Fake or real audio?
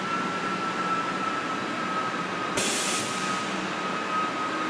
real